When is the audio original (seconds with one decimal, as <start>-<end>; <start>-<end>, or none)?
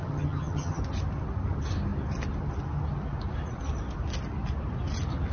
0.8-5.3